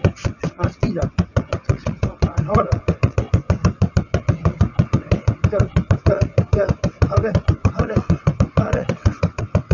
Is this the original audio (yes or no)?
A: no